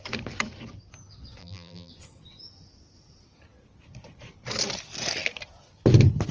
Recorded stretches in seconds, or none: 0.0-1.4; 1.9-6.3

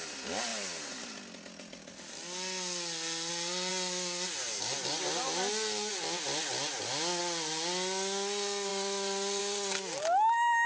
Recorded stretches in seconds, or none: 0.0-8.7; 9.4-10.7

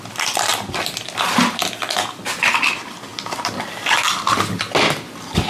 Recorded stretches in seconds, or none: 0.0-0.5; 2.2-3.1; 3.6-5.5

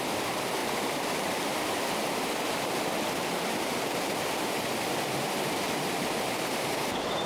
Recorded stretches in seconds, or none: none

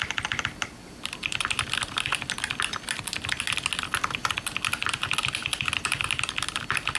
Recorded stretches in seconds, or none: 0.0-7.0

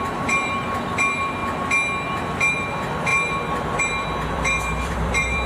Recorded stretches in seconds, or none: 1.4-2.5

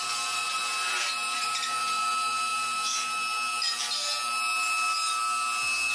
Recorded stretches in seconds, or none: 0.0-5.9

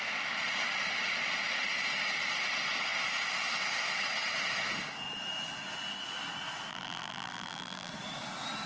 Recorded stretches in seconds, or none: 0.0-6.7; 7.9-8.7